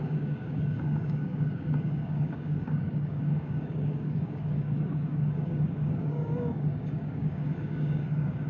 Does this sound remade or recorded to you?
remade